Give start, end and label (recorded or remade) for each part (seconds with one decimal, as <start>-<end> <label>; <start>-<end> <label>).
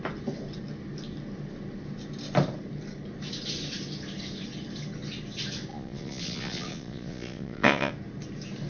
0.0-5.7 recorded; 5.7-7.9 remade; 7.9-8.7 recorded